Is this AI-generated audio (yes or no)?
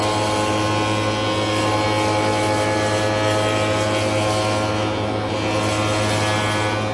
no